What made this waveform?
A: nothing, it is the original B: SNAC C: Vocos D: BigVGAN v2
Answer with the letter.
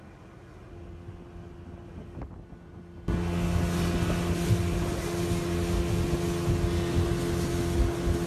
A